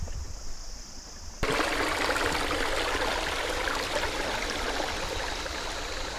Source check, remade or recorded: recorded